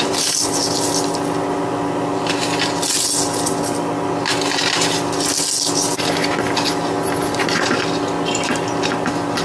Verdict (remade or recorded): recorded